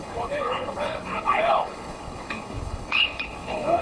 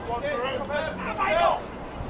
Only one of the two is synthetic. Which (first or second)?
first